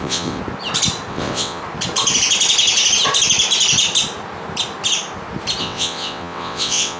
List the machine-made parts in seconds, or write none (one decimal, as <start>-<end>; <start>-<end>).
0.0-0.4; 1.1-1.6; 5.6-7.0